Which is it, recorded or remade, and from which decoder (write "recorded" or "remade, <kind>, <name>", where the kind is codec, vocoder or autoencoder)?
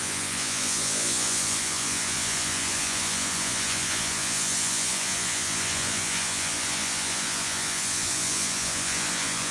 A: remade, vocoder, Vocos